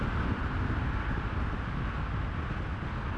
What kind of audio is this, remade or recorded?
recorded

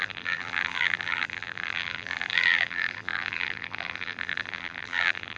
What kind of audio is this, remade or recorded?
remade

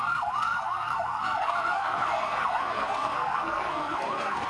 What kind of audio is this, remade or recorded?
remade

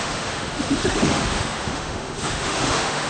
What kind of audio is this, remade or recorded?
remade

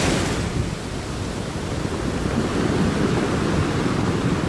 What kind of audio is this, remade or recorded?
recorded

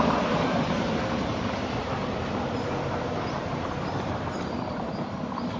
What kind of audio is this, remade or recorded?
remade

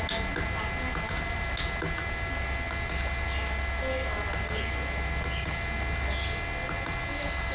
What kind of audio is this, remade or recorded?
recorded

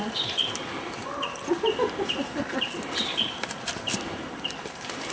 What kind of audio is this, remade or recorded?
recorded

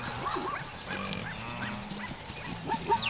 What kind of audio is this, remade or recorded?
recorded